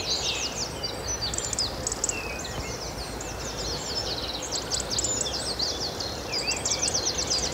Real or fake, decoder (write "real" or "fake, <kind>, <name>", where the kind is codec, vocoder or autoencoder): real